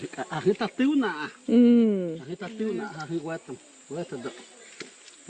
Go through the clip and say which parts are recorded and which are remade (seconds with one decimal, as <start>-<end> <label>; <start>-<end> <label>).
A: 0.0-5.3 recorded